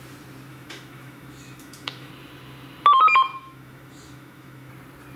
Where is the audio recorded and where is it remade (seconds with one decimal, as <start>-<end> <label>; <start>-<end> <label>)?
0.0-0.5 recorded; 0.5-2.1 remade; 2.1-3.3 recorded; 3.3-4.7 remade; 4.7-5.2 recorded